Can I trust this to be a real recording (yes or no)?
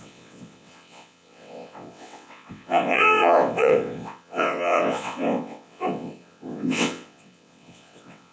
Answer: no